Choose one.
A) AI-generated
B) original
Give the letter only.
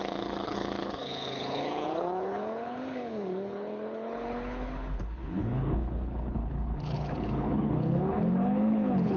A